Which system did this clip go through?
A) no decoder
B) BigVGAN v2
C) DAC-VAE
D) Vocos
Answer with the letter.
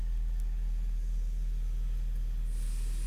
A